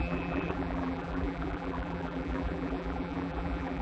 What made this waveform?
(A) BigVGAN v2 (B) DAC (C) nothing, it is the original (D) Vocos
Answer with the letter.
A